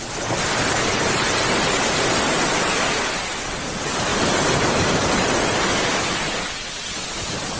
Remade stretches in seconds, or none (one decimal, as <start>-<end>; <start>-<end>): none